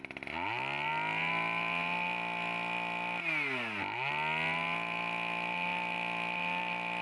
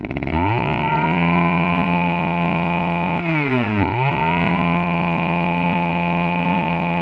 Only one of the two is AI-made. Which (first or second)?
second